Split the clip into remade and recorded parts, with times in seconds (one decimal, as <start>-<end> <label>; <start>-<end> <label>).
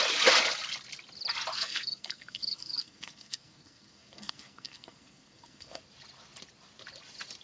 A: 0.0-1.5 recorded; 1.5-5.8 remade; 5.8-7.4 recorded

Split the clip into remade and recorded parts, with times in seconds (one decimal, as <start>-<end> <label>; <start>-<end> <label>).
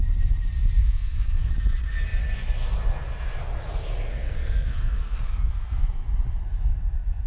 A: 0.0-0.8 recorded; 0.8-1.5 remade; 1.5-4.1 recorded; 4.1-5.9 remade; 5.9-7.3 recorded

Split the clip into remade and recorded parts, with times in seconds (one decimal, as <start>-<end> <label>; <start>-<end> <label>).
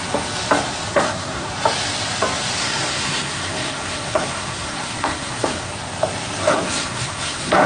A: 0.0-0.9 recorded; 0.9-1.5 remade; 1.5-2.6 recorded; 2.6-5.7 remade; 5.7-6.4 recorded; 6.4-7.7 remade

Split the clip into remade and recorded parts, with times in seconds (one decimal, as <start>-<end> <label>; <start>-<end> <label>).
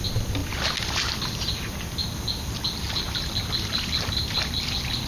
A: 0.0-5.1 recorded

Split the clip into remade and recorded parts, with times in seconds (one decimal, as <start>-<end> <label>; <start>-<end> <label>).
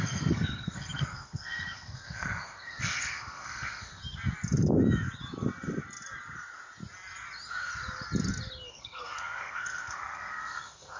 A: 0.0-4.0 remade; 4.0-8.7 recorded; 8.7-11.0 remade